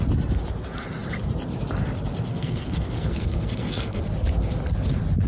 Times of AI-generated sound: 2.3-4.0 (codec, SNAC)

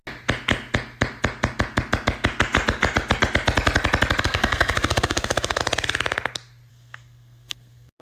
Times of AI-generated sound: 4.2-5.6 (codec, SNAC); 6.7-8.0

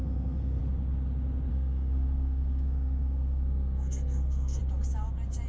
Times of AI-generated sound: 0.0-0.6 (codec, SNAC); 1.5-4.6

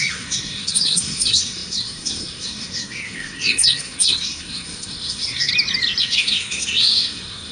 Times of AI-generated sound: 0.0-5.5 (codec, SNAC); 6.0-7.5

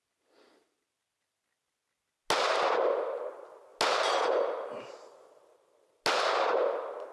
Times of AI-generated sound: none